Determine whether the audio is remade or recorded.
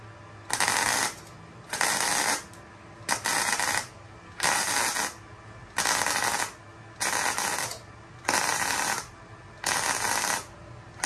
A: recorded